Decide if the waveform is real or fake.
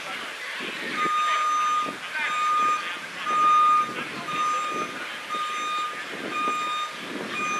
real